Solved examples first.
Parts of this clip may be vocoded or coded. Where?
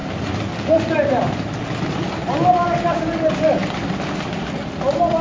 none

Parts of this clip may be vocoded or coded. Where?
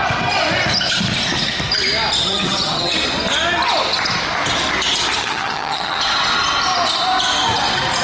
2.2-2.9; 5.2-6.0